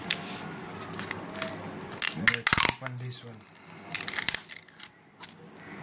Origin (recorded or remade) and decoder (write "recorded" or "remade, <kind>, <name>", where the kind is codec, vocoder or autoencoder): recorded